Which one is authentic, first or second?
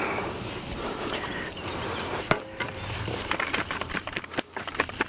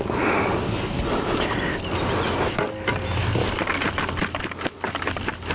second